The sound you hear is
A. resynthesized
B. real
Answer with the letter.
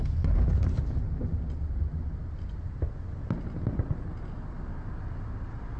B